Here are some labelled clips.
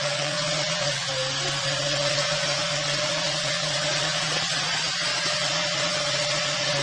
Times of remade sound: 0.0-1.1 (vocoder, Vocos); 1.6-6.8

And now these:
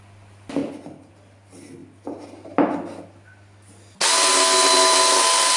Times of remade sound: none